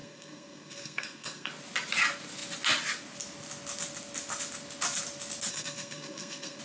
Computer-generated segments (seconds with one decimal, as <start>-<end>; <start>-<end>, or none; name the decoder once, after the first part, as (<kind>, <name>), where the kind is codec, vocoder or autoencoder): 0.0-1.5 (codec, SNAC); 5.5-6.6